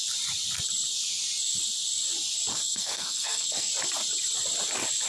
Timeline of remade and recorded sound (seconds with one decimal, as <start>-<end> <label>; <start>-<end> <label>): 0.0-2.5 recorded; 2.5-3.7 remade; 3.7-5.1 recorded